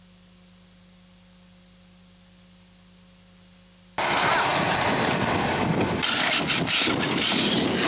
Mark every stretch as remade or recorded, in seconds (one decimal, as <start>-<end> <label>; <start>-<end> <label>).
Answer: 0.0-7.9 recorded